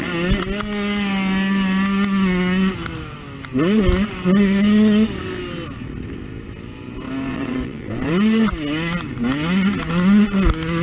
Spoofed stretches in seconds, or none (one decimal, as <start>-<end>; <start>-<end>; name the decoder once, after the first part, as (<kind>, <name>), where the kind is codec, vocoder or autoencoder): 7.3-8.1 (vocoder, WaveNeXt)